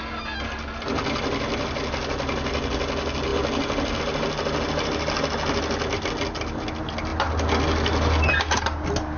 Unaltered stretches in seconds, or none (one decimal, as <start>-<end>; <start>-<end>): 0.0-9.2